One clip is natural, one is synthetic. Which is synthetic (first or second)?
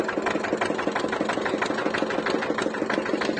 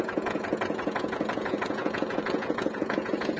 second